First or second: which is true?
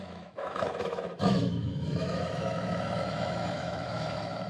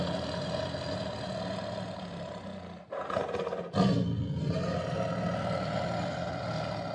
second